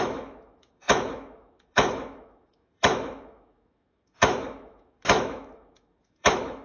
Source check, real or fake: fake